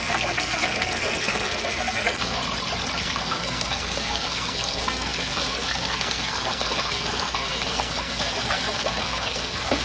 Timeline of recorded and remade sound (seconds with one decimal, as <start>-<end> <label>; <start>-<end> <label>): 0.0-2.4 remade; 2.4-3.0 recorded; 3.0-9.8 remade